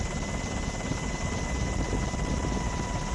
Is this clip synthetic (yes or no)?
no